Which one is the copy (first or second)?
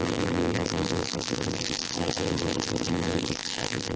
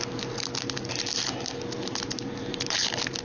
first